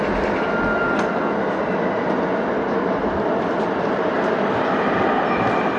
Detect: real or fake real